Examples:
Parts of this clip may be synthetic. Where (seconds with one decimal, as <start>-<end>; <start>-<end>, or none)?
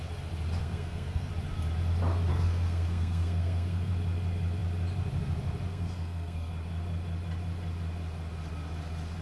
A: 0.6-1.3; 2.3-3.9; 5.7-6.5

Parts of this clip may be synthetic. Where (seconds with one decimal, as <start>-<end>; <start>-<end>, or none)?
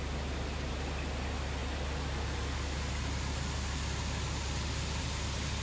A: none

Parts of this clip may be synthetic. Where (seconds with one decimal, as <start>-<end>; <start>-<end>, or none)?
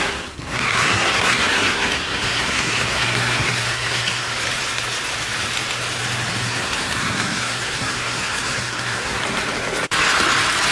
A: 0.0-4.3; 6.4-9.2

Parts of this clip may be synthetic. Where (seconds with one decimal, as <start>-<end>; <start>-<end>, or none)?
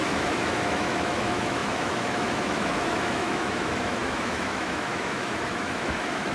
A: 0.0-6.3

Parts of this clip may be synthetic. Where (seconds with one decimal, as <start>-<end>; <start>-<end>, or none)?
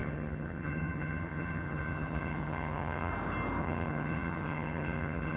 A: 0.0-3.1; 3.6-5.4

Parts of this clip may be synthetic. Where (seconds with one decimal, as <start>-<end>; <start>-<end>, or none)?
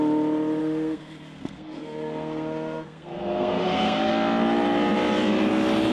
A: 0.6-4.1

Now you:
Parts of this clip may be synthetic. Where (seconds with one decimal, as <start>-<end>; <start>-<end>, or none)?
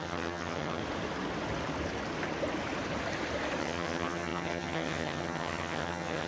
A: 0.0-0.8; 3.6-6.3